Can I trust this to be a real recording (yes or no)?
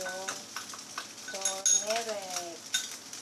yes